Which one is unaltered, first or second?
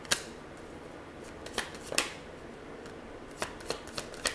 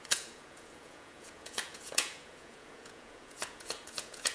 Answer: first